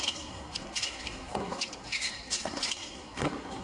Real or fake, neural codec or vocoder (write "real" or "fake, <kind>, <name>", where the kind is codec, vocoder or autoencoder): fake, codec, SNAC